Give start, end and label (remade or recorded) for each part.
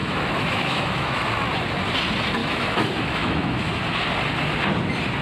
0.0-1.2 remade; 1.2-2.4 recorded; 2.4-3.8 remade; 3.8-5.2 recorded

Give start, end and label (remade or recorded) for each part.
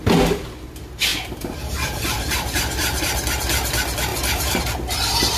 0.0-1.1 recorded; 1.1-3.0 remade; 3.0-4.1 recorded; 4.1-4.6 remade; 4.6-5.4 recorded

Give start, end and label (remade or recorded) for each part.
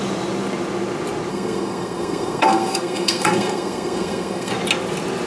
0.0-1.3 recorded; 1.3-4.5 remade; 4.5-5.3 recorded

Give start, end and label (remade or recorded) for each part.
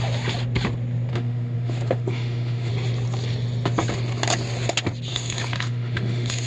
0.0-1.1 recorded; 1.1-2.7 remade; 2.7-5.1 recorded; 5.1-6.5 remade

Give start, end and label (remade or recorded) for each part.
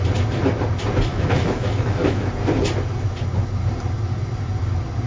0.0-1.1 recorded; 1.1-2.3 remade; 2.3-5.1 recorded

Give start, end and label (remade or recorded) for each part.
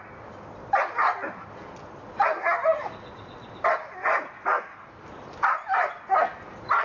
0.0-6.8 recorded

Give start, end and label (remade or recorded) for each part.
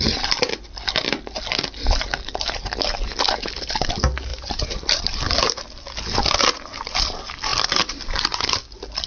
0.0-4.3 recorded; 4.3-5.4 remade; 5.4-7.5 recorded; 7.5-8.5 remade; 8.5-9.1 recorded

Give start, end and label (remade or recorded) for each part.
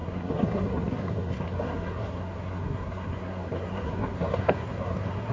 0.0-5.3 remade